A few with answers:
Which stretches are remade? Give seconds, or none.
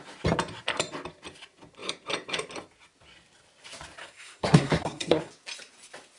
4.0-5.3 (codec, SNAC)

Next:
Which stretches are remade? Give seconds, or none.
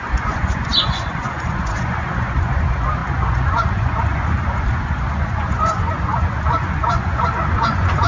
0.0-8.1 (vocoder, Vocos)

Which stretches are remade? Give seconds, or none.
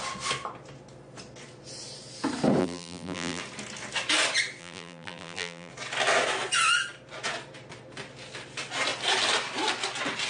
2.6-3.4 (vocoder, BigVGAN v2); 4.6-5.7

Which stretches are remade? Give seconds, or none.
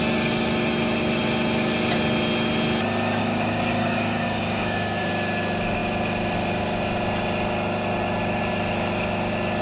3.2-5.1 (codec, DAC)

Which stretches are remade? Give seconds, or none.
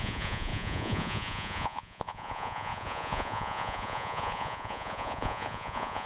0.0-6.1 (vocoder, Vocos)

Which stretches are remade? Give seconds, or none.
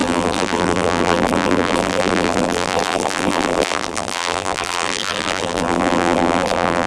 0.0-6.9 (vocoder, BigVGAN v2)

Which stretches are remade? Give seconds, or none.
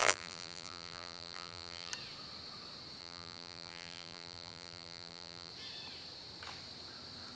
0.0-1.9 (vocoder, BigVGAN v2); 3.0-5.5